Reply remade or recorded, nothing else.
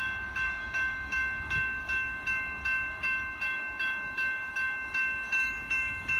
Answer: remade